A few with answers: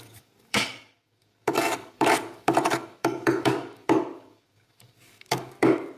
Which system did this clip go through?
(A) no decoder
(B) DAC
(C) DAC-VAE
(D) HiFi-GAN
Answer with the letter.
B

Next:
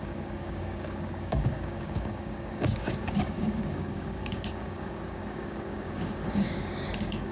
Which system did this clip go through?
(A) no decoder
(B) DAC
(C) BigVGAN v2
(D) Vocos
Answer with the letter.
B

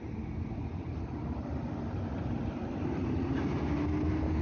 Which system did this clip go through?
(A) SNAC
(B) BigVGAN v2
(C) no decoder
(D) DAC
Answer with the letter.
C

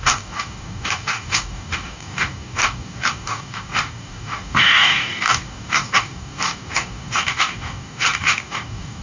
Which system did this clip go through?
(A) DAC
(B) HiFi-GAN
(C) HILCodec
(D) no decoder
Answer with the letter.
A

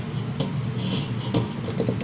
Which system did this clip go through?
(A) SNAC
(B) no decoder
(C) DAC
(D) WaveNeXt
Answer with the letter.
B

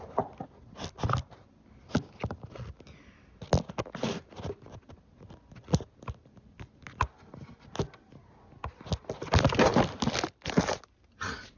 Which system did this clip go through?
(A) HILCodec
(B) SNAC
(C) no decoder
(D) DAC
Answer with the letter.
C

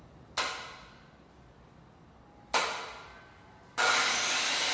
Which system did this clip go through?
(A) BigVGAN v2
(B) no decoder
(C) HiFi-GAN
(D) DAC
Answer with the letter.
B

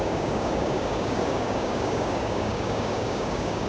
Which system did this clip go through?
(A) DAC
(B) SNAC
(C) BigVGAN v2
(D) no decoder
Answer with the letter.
A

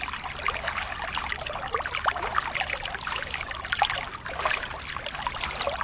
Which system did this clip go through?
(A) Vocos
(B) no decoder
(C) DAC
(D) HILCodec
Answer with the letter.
B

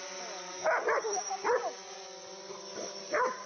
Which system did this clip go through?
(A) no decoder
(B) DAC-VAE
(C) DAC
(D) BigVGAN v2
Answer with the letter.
A